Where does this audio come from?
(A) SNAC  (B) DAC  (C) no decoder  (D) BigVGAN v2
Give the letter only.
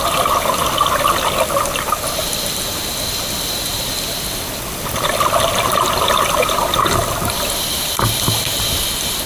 C